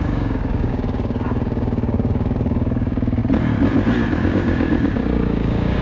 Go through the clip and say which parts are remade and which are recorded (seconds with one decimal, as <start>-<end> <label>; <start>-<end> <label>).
0.0-3.2 remade; 3.2-4.1 recorded; 4.1-5.8 remade